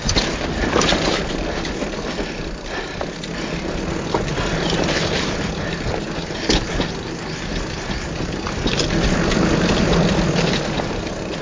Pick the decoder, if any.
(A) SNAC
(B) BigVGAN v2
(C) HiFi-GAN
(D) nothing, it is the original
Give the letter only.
D